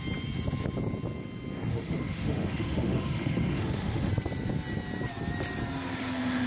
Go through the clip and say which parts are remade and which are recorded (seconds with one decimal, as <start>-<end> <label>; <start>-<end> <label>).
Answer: 0.0-1.7 recorded; 1.7-4.1 remade; 4.1-6.5 recorded